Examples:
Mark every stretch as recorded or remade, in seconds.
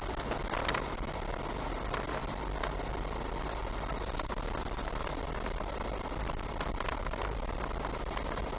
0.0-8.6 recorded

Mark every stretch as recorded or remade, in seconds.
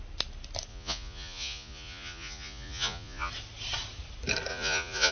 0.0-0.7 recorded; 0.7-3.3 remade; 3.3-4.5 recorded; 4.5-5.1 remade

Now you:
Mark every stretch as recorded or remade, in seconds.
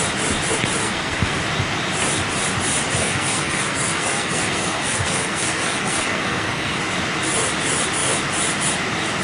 0.0-0.8 recorded; 0.8-1.4 remade; 1.4-3.0 recorded; 3.0-6.8 remade; 6.8-9.2 recorded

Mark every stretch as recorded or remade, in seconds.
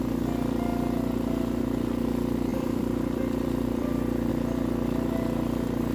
0.0-2.5 recorded; 2.5-4.3 remade; 4.3-5.9 recorded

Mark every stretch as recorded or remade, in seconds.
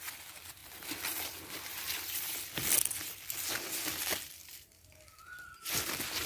0.0-6.3 recorded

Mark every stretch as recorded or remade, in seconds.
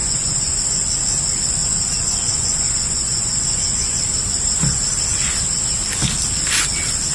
0.0-0.6 remade; 0.6-1.6 recorded; 1.6-4.0 remade; 4.0-7.1 recorded